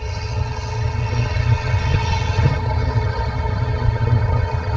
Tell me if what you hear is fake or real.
fake